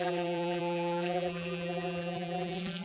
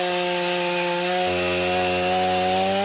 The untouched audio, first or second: second